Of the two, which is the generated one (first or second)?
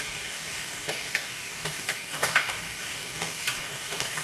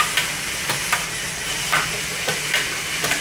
first